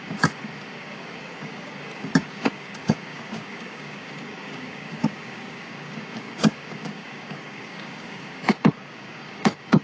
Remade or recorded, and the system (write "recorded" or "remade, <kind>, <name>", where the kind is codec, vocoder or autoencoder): remade, codec, DAC